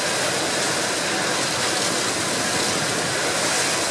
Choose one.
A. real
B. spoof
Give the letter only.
A